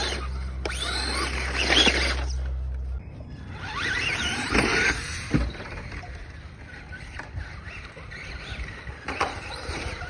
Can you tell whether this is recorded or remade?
recorded